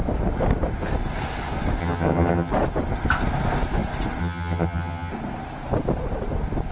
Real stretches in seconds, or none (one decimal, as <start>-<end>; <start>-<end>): 0.0-1.8; 2.5-4.2; 5.1-6.7